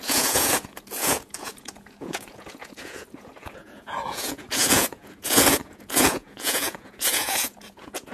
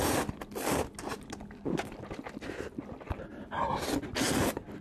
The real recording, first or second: second